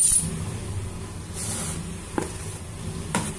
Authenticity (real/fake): real